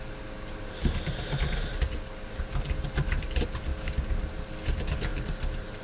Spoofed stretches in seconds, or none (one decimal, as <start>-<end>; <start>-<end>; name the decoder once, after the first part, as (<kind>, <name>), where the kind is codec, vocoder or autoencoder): 3.7-4.2 (codec, DAC)